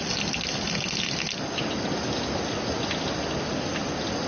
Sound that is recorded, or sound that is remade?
recorded